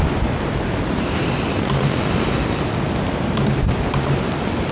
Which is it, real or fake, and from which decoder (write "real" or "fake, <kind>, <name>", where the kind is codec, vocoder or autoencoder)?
real